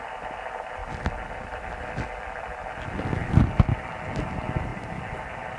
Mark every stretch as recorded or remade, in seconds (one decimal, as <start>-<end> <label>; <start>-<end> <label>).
0.0-4.7 recorded; 4.7-5.6 remade